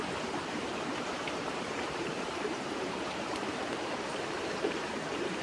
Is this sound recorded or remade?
remade